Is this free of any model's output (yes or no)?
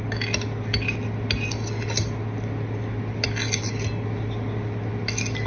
yes